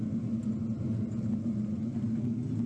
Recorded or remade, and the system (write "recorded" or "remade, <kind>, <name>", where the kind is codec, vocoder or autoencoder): recorded